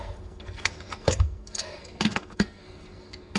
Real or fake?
fake